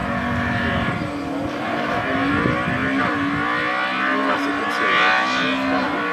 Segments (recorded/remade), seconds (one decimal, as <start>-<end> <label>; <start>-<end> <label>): 0.0-6.1 recorded